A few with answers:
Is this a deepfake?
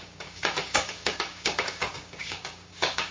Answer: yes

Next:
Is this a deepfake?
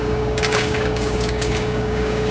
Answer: yes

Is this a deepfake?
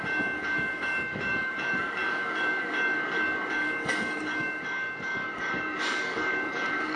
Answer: yes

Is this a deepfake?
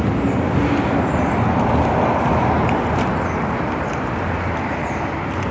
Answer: no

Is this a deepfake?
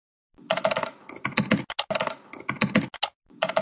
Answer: no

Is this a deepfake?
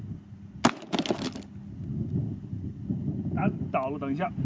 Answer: no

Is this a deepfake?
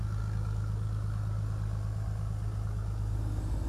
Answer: no